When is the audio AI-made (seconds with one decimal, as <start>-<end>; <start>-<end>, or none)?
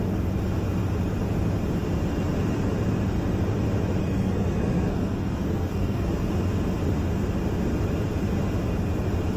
4.0-6.3